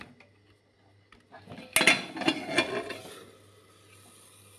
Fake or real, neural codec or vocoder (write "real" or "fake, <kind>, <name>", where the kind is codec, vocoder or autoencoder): real